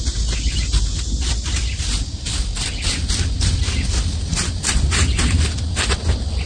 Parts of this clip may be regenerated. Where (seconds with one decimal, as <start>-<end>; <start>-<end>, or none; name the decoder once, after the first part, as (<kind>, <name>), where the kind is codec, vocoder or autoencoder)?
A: none